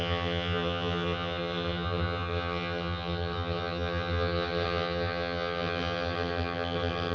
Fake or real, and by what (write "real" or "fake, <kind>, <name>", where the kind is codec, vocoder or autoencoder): fake, vocoder, HiFi-GAN